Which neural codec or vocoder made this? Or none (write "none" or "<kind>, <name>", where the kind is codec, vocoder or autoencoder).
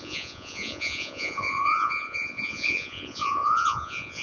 vocoder, Vocos